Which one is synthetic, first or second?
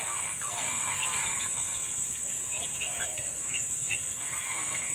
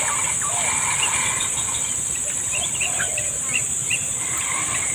first